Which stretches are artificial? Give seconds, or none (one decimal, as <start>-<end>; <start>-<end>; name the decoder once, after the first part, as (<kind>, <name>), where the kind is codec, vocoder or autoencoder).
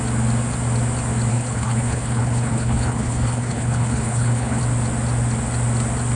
1.3-4.6 (codec, HILCodec)